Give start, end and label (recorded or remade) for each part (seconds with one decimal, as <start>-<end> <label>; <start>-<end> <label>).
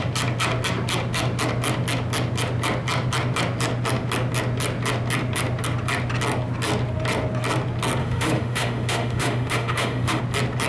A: 0.0-8.0 recorded; 8.0-10.2 remade; 10.2-10.7 recorded